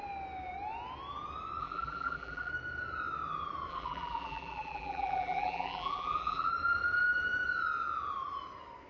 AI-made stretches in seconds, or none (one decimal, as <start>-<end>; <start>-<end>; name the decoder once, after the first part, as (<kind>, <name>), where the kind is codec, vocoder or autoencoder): 1.6-2.5 (vocoder, BigVGAN v2); 3.7-6.5